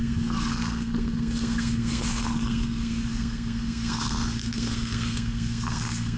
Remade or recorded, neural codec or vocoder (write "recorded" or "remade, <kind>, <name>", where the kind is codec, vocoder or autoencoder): remade, codec, SNAC